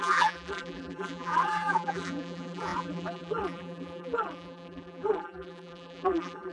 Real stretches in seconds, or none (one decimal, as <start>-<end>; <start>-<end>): none